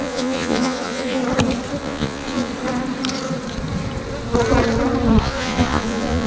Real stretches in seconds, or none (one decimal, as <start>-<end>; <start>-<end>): 1.2-1.8; 2.5-5.2